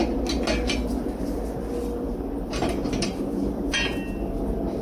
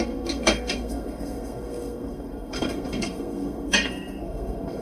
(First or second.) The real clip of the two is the first